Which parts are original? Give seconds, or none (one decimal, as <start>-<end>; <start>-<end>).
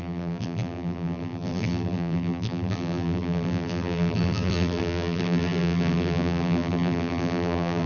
none